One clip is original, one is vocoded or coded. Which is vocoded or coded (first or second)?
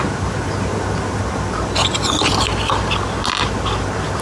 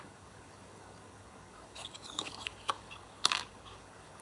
second